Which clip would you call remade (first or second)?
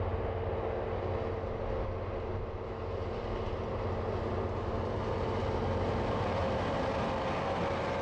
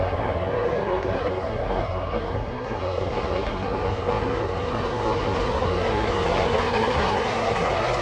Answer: second